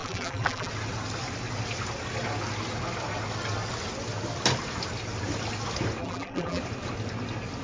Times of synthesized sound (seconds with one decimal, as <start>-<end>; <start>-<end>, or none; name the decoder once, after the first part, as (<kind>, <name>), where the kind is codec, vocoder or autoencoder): 0.0-0.7 (vocoder, BigVGAN v2); 6.0-6.6